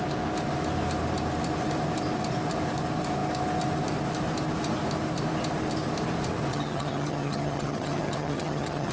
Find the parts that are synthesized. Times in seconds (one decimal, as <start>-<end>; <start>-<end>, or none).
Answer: 6.5-8.9